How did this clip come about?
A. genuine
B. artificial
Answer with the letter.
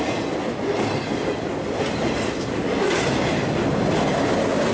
A